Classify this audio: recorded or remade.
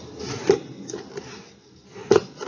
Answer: recorded